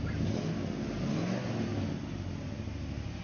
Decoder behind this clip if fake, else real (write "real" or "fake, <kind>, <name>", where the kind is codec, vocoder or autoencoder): real